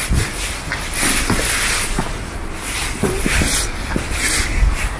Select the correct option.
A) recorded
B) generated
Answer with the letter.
A